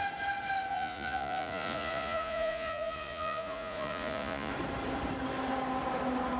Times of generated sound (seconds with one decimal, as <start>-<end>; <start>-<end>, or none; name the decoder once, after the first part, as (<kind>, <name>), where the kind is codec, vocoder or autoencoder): 0.7-4.5 (vocoder, Vocos)